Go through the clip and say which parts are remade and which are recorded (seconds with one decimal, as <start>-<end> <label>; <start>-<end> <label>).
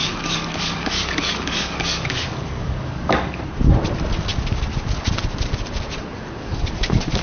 0.0-3.4 remade; 3.4-7.2 recorded